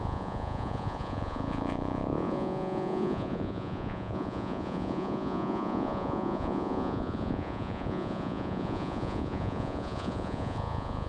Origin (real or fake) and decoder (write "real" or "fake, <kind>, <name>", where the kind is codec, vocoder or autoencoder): fake, vocoder, Vocos